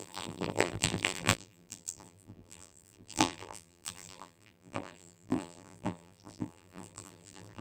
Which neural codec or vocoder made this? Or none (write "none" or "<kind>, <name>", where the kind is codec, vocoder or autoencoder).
vocoder, BigVGAN v2